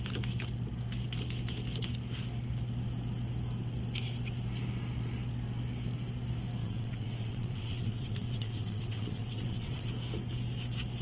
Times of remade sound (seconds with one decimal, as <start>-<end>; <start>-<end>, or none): 6.6-9.9